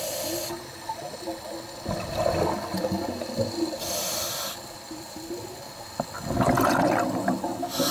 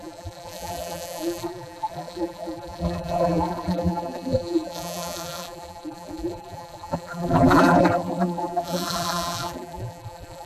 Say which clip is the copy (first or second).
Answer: second